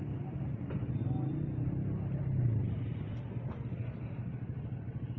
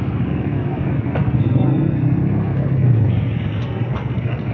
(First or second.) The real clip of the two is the first